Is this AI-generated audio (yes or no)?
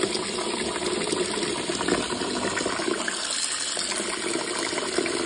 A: no